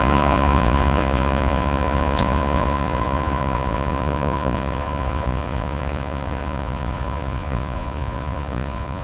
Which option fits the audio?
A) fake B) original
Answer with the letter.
A